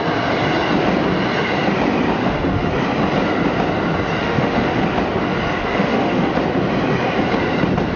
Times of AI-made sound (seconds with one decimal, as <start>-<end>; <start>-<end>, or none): 2.2-2.7; 4.2-4.8; 5.6-6.3